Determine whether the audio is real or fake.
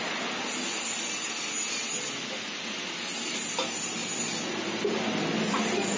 real